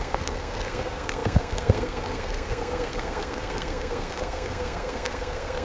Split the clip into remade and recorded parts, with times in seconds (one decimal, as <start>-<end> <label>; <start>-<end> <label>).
0.0-5.6 remade